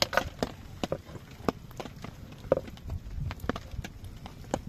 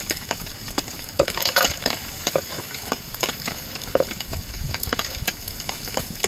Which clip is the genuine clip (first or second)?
first